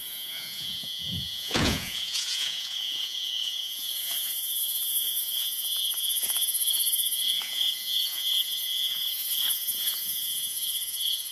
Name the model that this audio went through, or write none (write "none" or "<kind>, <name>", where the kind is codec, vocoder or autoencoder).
vocoder, Vocos